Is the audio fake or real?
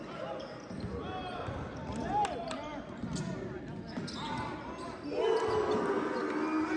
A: real